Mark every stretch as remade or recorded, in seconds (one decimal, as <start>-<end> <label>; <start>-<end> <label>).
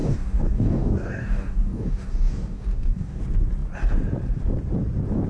0.0-3.2 remade; 3.2-5.3 recorded